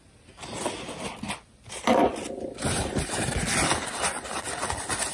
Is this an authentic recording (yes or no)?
yes